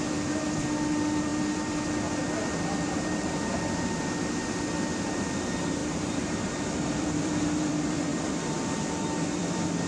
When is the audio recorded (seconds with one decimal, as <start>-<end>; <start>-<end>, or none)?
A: none

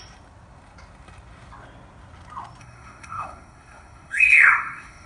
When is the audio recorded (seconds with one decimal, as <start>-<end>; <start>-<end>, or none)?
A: 0.0-2.6

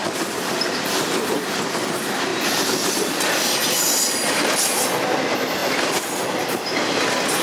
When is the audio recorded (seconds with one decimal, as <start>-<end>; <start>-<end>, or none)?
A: 2.3-2.9

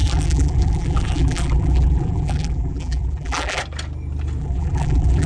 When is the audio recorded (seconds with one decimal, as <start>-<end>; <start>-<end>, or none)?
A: 3.6-4.4